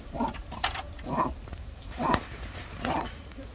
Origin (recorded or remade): recorded